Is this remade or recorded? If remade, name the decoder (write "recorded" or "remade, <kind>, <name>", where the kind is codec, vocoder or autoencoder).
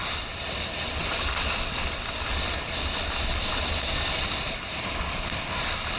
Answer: recorded